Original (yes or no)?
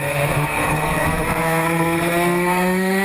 no